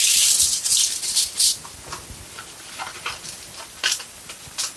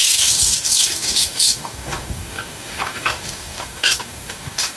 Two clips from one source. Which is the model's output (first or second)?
second